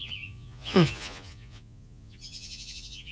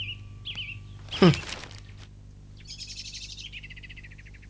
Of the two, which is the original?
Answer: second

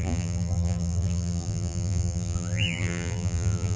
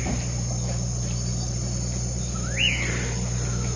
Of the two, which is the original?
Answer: second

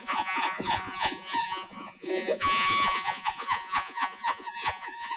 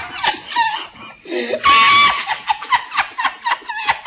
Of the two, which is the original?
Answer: second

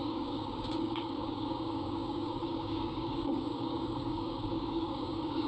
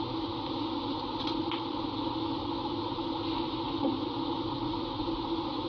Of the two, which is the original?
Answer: second